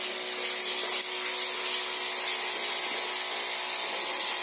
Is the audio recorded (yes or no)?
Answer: yes